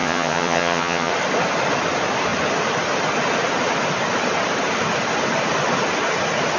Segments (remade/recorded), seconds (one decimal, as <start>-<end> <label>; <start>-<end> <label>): 0.0-1.1 remade; 1.1-6.6 recorded